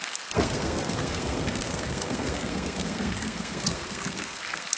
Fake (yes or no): yes